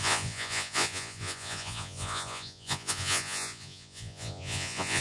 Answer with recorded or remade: remade